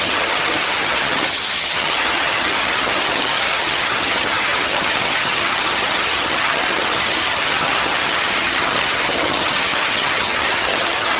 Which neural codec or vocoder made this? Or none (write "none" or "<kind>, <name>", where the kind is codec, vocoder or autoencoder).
vocoder, HiFi-GAN